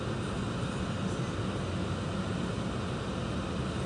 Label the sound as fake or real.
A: real